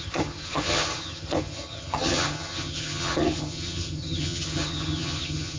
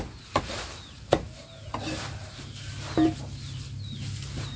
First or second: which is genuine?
second